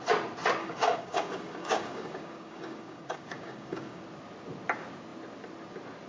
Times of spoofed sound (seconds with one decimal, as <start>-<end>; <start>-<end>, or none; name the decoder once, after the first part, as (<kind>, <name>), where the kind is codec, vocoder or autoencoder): 0.6-4.0 (codec, DAC)